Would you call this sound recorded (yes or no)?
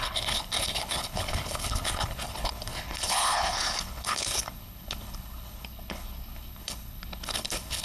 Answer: no